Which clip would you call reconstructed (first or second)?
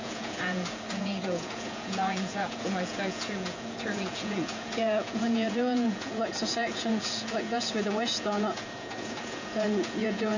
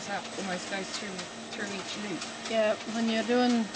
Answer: first